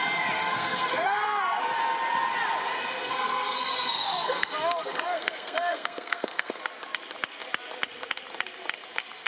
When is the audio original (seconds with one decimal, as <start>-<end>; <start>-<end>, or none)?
0.0-0.4; 1.6-3.0; 6.6-9.3